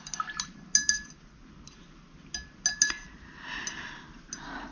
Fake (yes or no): no